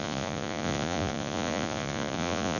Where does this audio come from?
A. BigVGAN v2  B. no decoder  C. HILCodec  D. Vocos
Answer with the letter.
D